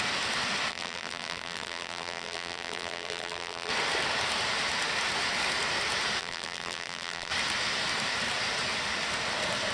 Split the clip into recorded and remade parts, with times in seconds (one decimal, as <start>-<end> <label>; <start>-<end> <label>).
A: 0.0-0.7 recorded; 0.7-3.7 remade; 3.7-6.2 recorded; 6.2-7.3 remade; 7.3-9.7 recorded